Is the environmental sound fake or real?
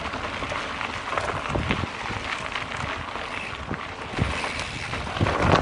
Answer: real